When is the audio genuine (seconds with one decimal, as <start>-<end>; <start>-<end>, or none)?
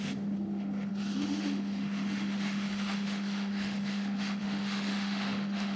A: none